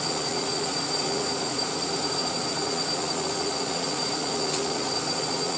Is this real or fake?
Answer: fake